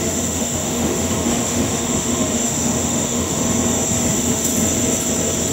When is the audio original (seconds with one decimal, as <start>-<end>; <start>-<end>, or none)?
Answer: 3.4-4.1; 4.5-5.5